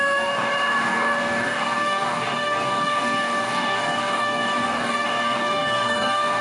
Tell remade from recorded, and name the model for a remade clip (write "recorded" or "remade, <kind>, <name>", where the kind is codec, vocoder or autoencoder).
remade, codec, DAC